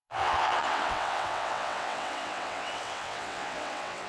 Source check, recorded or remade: remade